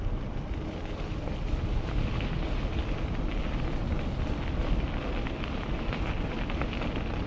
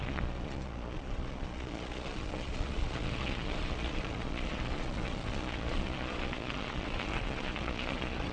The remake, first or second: second